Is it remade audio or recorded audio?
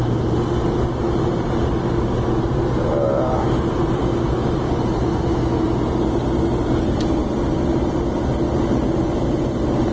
recorded